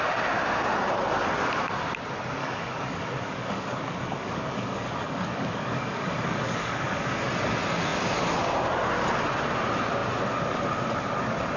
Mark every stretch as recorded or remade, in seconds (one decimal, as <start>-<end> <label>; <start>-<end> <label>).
0.0-2.4 recorded; 2.4-7.3 remade; 7.3-11.6 recorded